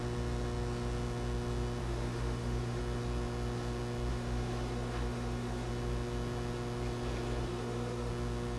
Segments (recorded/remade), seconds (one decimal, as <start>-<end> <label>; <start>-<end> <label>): 0.0-1.8 recorded; 1.8-2.8 remade; 2.8-4.1 recorded; 4.1-5.7 remade; 5.7-7.4 recorded; 7.4-8.1 remade; 8.1-8.6 recorded